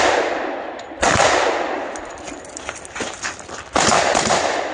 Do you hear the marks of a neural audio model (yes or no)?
no